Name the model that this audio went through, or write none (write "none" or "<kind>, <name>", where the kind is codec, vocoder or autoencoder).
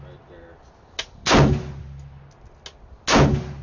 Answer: none